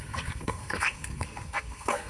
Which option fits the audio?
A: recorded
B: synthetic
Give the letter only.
B